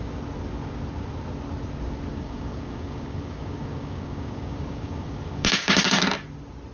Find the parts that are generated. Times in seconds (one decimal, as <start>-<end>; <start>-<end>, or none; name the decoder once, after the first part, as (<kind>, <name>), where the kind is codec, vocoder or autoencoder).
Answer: 2.1-6.0 (codec, DAC)